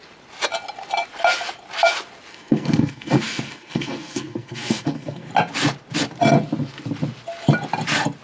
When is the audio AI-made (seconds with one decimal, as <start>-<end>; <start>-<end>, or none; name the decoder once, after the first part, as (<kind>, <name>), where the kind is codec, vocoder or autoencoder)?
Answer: 2.3-5.3 (codec, SNAC)